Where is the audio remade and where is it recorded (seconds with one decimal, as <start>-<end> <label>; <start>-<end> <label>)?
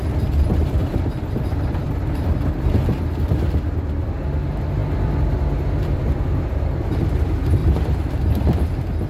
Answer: 0.0-0.8 recorded; 0.8-2.4 remade; 2.4-4.8 recorded; 4.8-7.0 remade; 7.0-7.6 recorded; 7.6-8.7 remade; 8.7-9.1 recorded